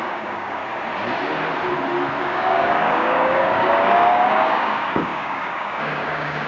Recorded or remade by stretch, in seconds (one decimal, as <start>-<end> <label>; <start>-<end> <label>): 0.0-0.6 remade; 0.6-2.2 recorded; 2.2-6.5 remade